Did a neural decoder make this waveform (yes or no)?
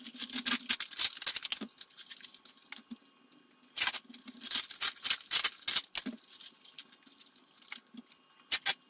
no